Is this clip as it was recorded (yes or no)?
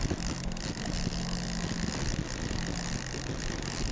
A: yes